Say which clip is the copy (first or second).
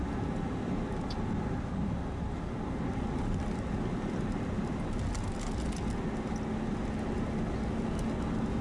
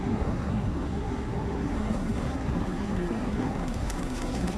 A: second